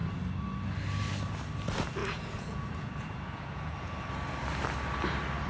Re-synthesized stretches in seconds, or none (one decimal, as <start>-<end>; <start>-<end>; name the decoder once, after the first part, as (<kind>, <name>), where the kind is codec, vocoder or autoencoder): 2.0-4.0 (vocoder, Vocos)